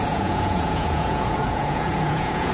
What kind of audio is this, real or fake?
fake